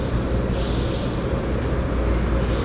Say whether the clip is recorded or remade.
recorded